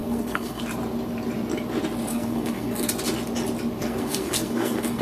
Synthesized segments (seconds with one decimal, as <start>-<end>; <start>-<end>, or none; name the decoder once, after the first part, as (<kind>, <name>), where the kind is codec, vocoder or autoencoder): 0.0-0.6 (codec, SNAC); 2.1-2.9; 3.8-5.0